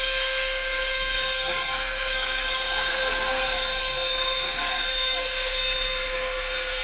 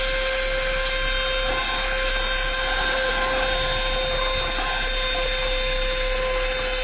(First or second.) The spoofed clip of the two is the first